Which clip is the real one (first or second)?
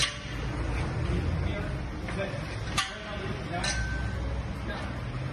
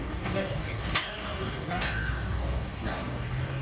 first